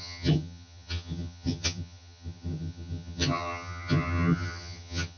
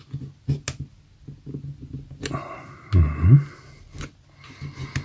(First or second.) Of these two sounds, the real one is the second